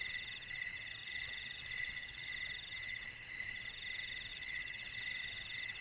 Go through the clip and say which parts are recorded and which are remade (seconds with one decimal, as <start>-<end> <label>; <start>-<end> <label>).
0.0-1.0 recorded; 1.0-2.3 remade; 2.3-4.3 recorded; 4.3-4.9 remade; 4.9-5.8 recorded